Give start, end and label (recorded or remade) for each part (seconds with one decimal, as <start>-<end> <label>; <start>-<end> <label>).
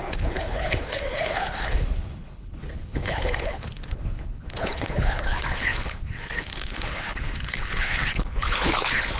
0.0-9.2 remade